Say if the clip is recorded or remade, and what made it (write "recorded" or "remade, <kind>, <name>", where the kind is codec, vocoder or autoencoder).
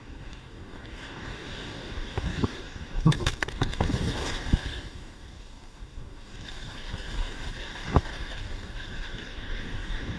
remade, codec, DAC